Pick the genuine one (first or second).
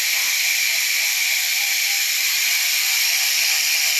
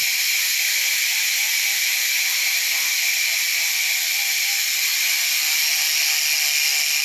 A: second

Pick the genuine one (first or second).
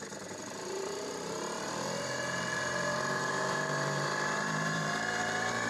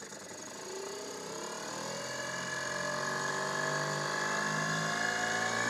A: second